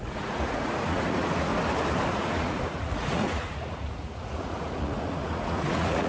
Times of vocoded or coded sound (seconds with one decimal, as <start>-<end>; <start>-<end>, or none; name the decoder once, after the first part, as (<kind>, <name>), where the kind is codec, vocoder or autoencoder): 0.0-1.5 (vocoder, Vocos); 2.1-6.1